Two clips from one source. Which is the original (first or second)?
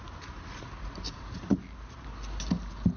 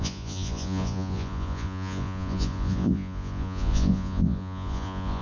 first